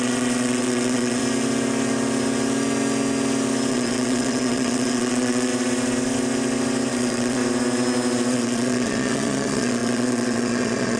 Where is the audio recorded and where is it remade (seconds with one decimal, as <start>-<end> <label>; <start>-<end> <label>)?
0.0-1.2 remade; 1.2-3.7 recorded; 3.7-5.5 remade; 5.5-6.9 recorded; 6.9-7.4 remade; 7.4-8.3 recorded; 8.3-11.0 remade